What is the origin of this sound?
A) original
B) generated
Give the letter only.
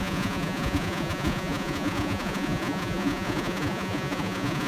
B